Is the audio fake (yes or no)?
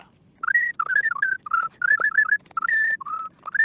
no